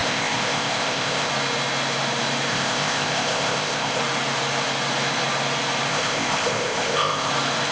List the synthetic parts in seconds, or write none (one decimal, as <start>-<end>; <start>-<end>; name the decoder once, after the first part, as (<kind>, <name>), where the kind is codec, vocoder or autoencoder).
0.0-1.3 (codec, ZipCodec); 2.5-4.0; 5.9-7.3